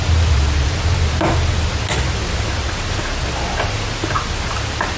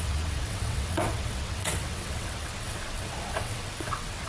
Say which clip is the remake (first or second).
second